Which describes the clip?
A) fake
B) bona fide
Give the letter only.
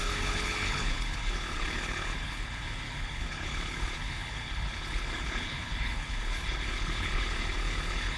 A